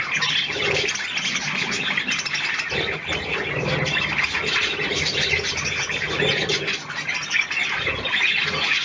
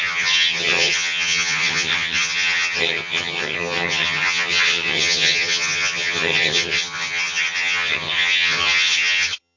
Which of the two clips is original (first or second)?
first